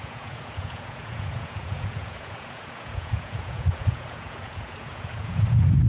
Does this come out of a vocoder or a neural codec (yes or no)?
yes